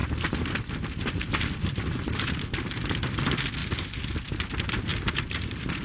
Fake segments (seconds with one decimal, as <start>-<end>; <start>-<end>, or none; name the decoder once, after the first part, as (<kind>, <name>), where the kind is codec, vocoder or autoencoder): 0.0-2.8 (vocoder, BigVGAN v2); 4.9-5.8